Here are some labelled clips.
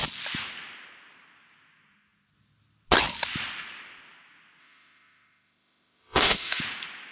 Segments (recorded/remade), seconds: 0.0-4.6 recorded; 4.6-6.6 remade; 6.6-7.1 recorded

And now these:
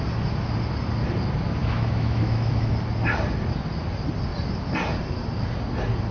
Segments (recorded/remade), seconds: 0.0-1.6 recorded; 1.6-2.7 remade; 2.7-6.1 recorded

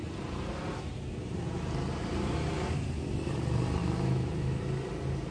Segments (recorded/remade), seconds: 0.0-3.8 recorded; 3.8-4.6 remade; 4.6-5.3 recorded

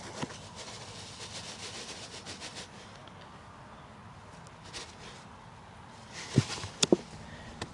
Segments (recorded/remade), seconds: 0.0-7.7 recorded

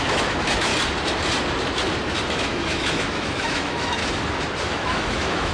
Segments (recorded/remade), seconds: 0.0-0.7 remade; 0.7-2.3 recorded; 2.3-4.0 remade; 4.0-4.6 recorded; 4.6-5.5 remade